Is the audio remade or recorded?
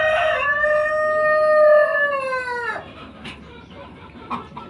recorded